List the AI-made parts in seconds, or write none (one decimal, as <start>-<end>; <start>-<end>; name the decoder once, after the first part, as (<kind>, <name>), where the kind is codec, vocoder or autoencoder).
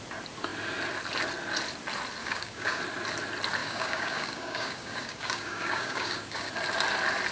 2.2-2.8 (codec, DAC); 3.6-6.5